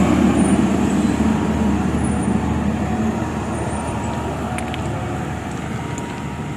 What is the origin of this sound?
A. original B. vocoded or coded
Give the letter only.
A